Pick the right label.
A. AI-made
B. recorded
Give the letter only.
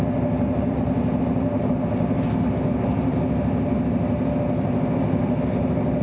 B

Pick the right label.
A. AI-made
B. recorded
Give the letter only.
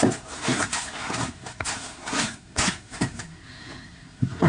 A